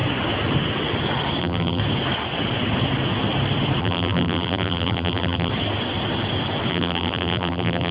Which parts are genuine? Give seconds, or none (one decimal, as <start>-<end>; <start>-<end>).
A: 0.0-1.4; 1.8-3.8; 5.5-6.7